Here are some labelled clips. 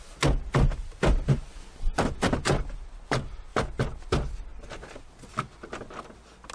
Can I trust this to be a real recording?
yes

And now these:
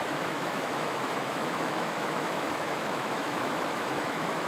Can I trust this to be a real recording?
no